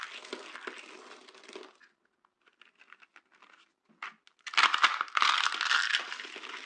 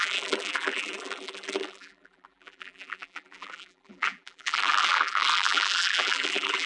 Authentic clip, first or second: first